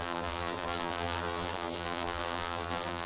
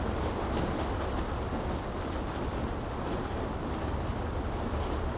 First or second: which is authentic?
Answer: second